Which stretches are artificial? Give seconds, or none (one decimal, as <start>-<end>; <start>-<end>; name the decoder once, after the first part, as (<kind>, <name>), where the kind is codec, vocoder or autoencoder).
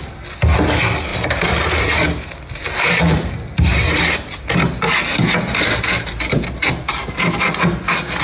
1.1-3.3 (vocoder, BigVGAN v2)